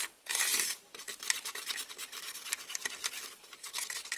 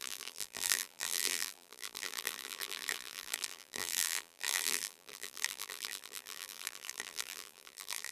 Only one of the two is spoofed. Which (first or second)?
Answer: second